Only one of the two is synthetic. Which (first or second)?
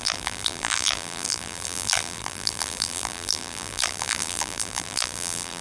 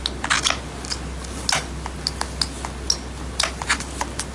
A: first